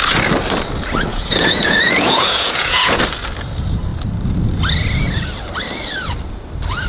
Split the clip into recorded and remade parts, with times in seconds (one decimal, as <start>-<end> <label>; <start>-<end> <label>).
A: 0.0-1.1 recorded; 1.1-3.0 remade; 3.0-6.9 recorded